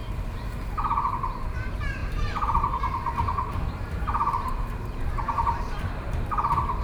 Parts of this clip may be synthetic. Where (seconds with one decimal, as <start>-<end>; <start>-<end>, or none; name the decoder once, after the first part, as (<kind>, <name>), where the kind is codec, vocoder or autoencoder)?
1.1-6.8 (vocoder, BigVGAN v2)